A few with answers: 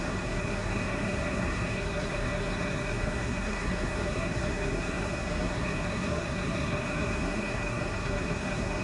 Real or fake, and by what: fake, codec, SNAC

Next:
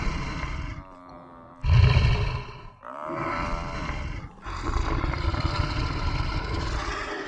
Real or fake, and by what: real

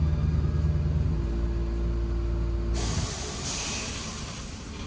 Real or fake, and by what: real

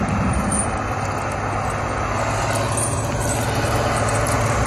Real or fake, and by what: real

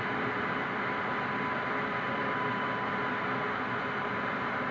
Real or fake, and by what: real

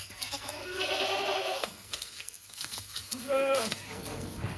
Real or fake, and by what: fake, codec, SNAC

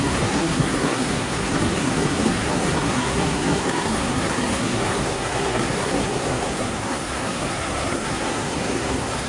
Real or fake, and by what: fake, codec, SNAC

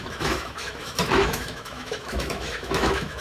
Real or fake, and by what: fake, autoencoder, DAC-VAE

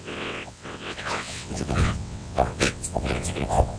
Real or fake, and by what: fake, vocoder, WaveNeXt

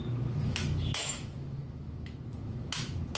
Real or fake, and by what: fake, autoencoder, DAC-VAE